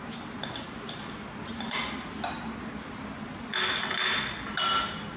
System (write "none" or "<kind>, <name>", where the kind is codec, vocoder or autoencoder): none